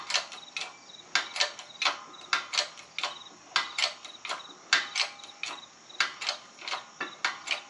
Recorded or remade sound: recorded